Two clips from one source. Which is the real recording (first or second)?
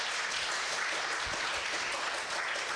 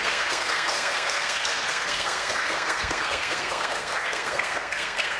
first